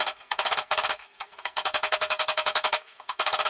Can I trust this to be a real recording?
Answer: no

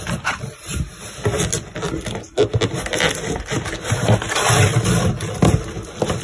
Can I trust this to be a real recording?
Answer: yes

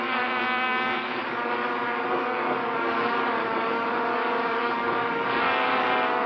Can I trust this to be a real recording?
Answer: no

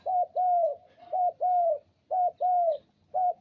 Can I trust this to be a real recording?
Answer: yes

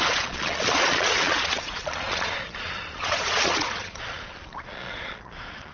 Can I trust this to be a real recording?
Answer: no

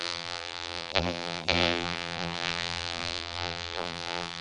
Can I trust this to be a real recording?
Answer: no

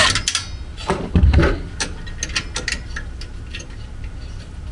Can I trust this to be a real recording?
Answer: yes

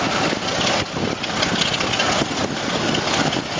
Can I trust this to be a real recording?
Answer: yes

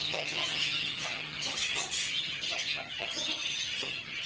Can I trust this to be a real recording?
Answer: no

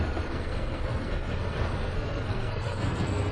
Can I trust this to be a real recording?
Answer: no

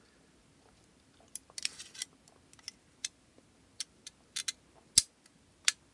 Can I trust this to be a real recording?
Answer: yes